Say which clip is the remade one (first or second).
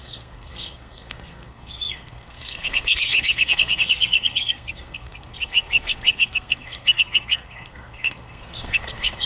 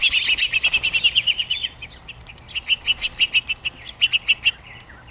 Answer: first